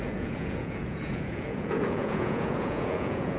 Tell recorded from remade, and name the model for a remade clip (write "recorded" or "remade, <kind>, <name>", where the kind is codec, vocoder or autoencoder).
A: remade, vocoder, Vocos